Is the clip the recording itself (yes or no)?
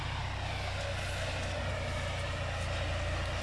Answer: yes